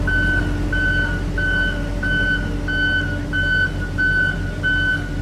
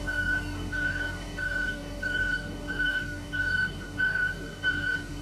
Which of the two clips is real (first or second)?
first